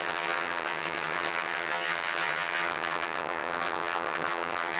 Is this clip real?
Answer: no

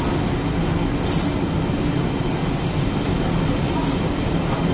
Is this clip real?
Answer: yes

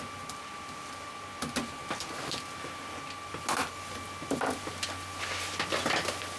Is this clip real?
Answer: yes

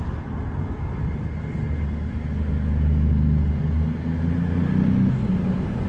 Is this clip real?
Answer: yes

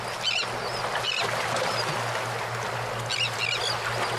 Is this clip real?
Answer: yes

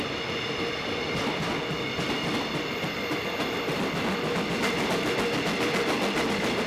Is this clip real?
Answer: yes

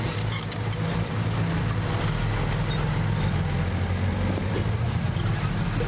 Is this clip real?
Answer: yes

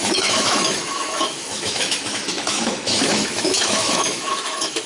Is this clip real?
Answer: no